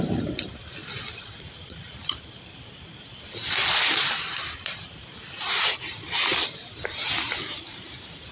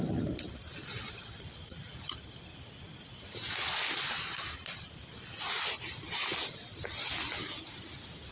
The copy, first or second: first